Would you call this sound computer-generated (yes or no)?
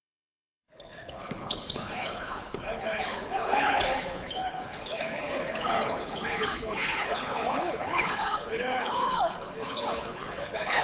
yes